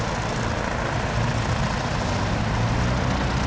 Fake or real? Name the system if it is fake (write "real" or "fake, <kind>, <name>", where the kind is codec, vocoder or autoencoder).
real